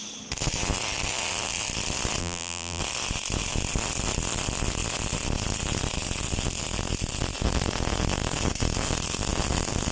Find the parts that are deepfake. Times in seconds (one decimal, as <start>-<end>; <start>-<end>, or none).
2.2-2.8

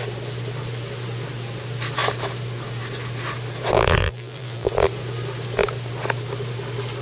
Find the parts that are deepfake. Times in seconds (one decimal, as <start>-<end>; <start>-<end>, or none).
4.0-4.7

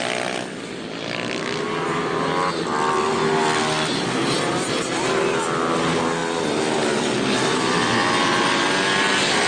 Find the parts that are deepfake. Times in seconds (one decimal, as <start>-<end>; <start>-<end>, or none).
none

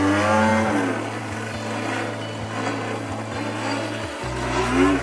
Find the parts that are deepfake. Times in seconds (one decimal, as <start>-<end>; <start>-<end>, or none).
none

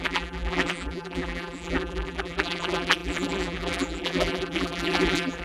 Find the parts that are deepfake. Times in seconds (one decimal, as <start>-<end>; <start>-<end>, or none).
0.0-5.4

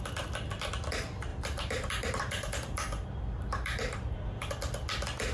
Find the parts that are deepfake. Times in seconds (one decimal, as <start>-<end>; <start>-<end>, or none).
1.3-4.5